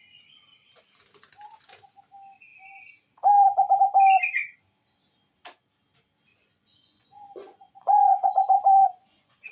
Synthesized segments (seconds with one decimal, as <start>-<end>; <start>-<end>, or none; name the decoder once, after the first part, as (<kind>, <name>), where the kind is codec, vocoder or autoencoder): 6.3-9.5 (vocoder, Vocos)